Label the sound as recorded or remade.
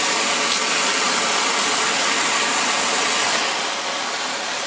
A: recorded